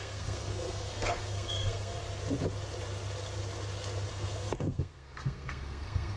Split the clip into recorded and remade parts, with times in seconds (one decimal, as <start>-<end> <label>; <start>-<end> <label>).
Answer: 0.0-2.0 remade; 2.0-4.1 recorded; 4.1-6.2 remade